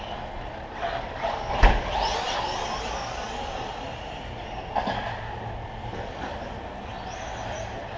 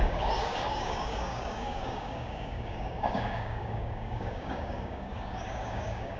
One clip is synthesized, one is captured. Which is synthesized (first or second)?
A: second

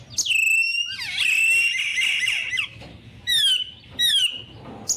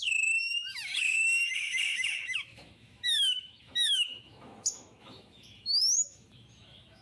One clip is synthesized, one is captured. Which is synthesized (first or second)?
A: second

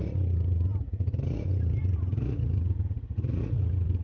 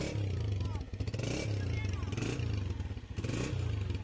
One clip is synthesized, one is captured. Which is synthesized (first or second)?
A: first